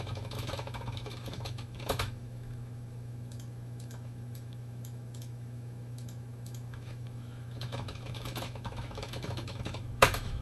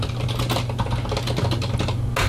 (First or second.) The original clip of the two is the second